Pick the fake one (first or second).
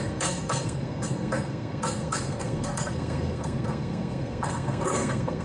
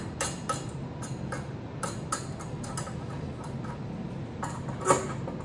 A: first